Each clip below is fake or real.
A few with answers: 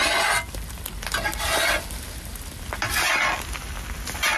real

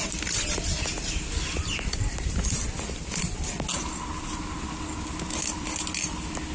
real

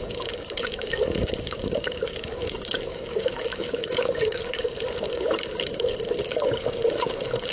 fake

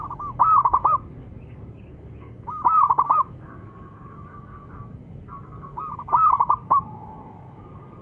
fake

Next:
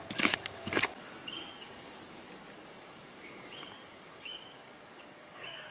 fake